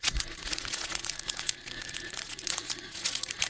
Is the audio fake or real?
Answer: fake